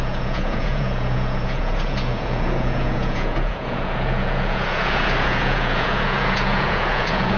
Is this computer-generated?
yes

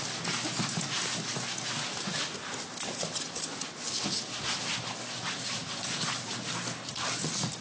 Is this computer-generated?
no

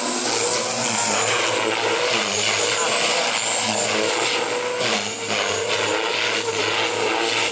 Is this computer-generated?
no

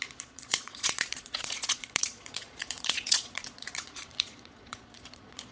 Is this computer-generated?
yes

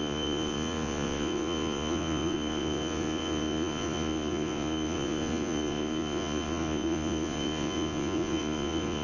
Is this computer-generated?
yes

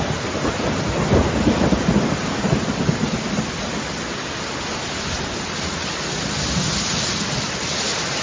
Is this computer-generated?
no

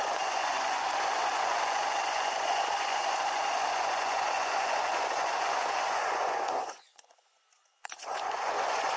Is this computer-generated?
yes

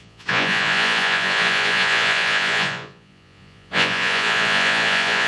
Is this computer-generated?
yes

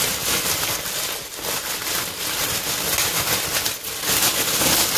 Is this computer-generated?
no